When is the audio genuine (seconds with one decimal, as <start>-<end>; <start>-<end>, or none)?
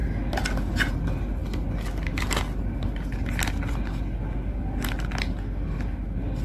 0.0-6.4